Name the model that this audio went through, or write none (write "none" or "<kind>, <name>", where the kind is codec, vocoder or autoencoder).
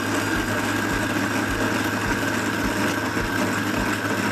none